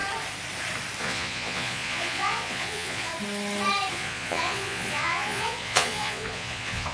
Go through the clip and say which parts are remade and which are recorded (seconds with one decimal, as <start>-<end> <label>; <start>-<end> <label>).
0.0-1.0 recorded; 1.0-3.1 remade; 3.1-3.9 recorded; 3.9-6.9 remade